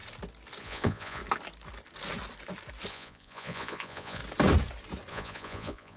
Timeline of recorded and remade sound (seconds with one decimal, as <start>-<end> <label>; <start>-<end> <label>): 0.0-0.6 recorded; 0.6-1.2 remade; 1.2-2.9 recorded; 2.9-4.2 remade; 4.2-5.1 recorded; 5.1-6.0 remade